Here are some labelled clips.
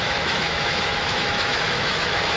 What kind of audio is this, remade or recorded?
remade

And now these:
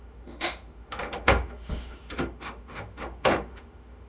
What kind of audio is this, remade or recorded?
remade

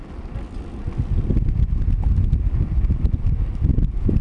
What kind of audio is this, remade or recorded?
recorded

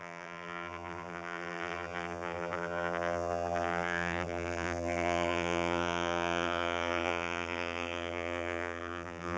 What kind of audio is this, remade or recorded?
remade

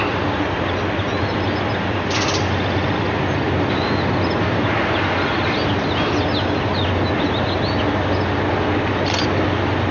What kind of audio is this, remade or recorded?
recorded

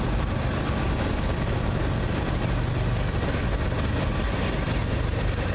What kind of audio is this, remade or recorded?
recorded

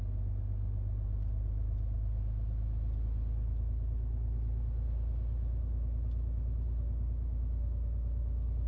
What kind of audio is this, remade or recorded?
recorded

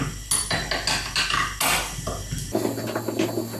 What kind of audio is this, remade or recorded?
recorded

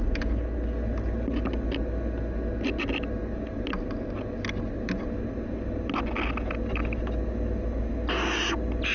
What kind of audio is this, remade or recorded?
recorded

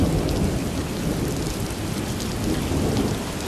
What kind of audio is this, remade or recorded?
recorded